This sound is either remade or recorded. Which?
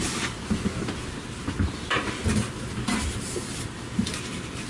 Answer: recorded